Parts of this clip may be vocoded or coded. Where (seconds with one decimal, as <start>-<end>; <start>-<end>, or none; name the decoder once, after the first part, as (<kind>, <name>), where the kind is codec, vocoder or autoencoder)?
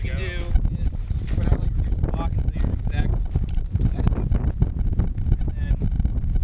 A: 3.1-4.1 (vocoder, BigVGAN v2)